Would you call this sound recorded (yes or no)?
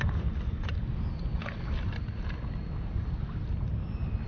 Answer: yes